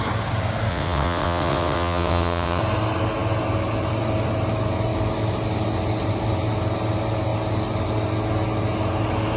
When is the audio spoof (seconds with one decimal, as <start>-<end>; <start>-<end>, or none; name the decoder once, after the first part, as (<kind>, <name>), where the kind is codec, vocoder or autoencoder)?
0.7-2.6 (vocoder, WaveNeXt)